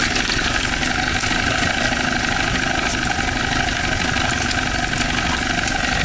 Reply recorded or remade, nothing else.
recorded